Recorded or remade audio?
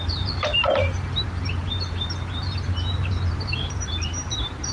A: remade